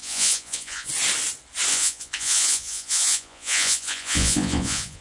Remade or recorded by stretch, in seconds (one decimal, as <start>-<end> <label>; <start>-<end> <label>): 0.0-0.9 remade; 0.9-1.7 recorded; 1.7-5.0 remade